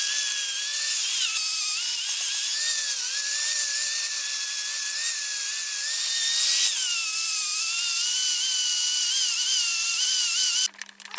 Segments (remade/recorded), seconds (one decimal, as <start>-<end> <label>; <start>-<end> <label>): 0.0-0.7 recorded; 0.7-1.4 remade; 1.4-11.2 recorded